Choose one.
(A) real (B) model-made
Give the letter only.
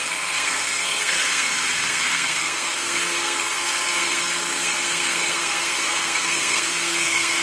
B